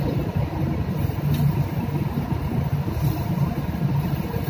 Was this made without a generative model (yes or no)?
yes